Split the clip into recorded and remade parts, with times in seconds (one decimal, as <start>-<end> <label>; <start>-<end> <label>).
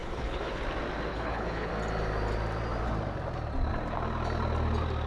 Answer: 0.0-0.6 remade; 0.6-1.1 recorded; 1.1-1.7 remade; 1.7-5.1 recorded